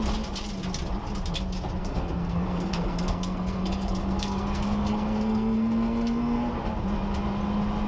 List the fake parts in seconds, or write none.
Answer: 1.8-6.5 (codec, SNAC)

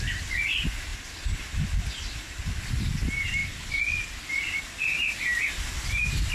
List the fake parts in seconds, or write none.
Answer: 0.9-2.5 (vocoder, BigVGAN v2); 3.4-4.6

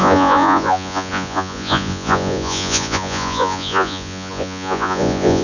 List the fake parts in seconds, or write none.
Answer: 0.0-5.4 (vocoder, Vocos)

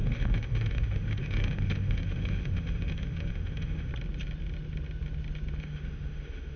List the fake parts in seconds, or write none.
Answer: 0.0-3.9 (autoencoder, DAC-VAE); 5.6-6.6

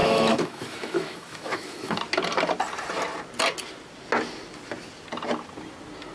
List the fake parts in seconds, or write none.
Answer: 0.0-2.0 (autoencoder, DAC-VAE)

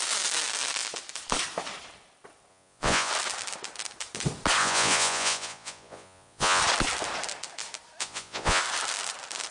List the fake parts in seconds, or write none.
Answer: 2.5-3.1 (vocoder, Vocos); 4.6-6.6; 8.0-8.6

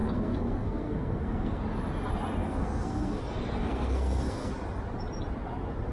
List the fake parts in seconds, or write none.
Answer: 0.0-1.6 (codec, SNAC); 2.4-3.2; 3.6-4.5

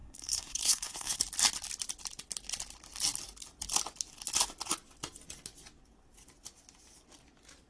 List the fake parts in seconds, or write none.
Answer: 0.0-1.2 (codec, SNAC)